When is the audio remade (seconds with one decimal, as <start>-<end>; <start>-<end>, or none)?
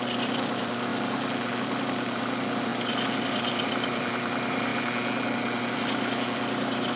0.0-0.9; 1.6-2.7; 3.3-4.7; 5.6-7.0